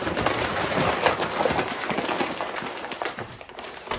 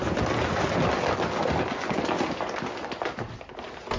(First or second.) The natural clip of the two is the second